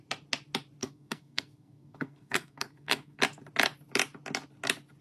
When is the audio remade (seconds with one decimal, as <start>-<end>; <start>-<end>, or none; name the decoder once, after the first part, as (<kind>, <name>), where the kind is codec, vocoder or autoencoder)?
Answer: 0.8-3.2 (codec, SNAC)